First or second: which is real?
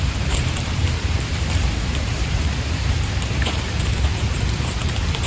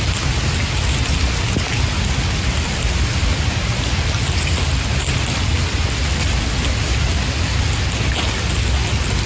second